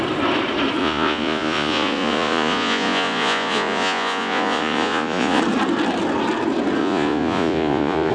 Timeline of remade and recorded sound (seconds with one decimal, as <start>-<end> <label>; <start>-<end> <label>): 0.0-0.8 recorded; 0.8-5.4 remade; 5.4-6.8 recorded; 6.8-8.1 remade